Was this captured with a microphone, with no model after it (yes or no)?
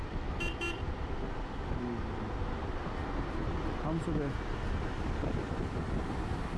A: yes